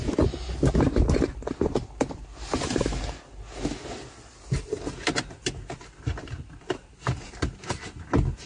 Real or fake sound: real